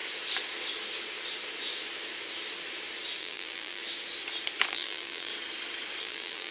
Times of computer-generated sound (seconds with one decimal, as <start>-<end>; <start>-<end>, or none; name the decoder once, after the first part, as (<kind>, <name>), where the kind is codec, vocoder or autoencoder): 3.2-3.8 (vocoder, BigVGAN v2); 4.7-5.3; 6.0-6.5